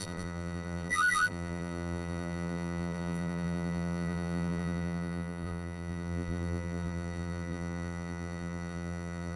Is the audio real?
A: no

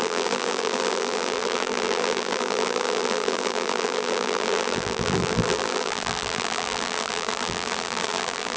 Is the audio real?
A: no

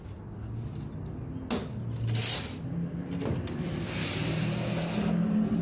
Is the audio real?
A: yes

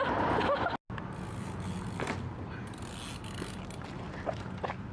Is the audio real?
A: yes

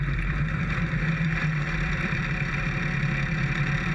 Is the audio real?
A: no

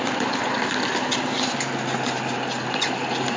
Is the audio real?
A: yes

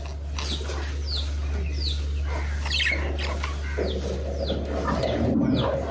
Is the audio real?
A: yes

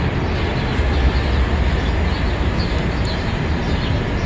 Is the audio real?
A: yes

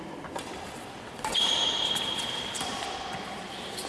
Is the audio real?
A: no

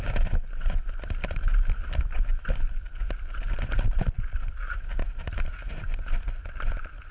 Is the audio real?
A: no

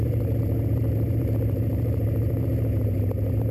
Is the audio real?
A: no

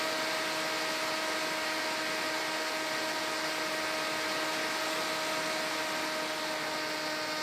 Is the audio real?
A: yes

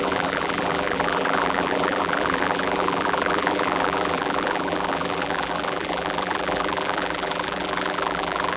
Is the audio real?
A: no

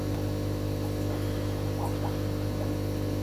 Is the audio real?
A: yes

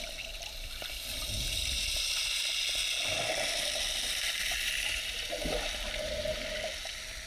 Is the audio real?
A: yes